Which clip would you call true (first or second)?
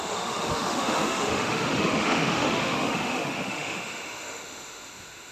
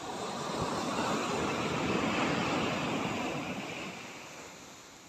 second